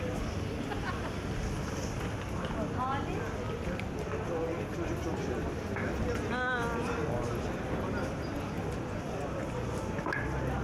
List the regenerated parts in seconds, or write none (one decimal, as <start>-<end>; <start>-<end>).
none